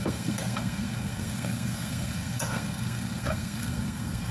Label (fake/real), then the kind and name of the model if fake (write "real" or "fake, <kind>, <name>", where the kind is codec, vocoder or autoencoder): fake, codec, SNAC